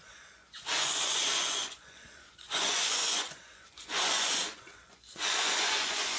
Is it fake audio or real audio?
fake